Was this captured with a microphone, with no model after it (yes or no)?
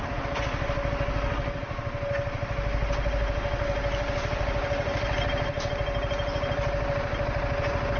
yes